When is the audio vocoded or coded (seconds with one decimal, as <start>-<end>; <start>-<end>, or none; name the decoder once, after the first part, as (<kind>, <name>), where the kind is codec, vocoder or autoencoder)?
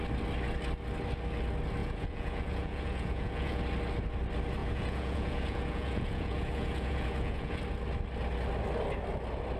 1.8-3.6 (vocoder, Vocos); 4.6-7.6